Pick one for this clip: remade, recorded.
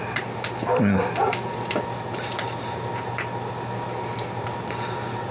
recorded